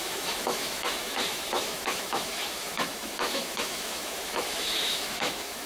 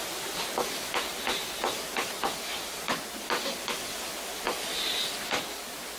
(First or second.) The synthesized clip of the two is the first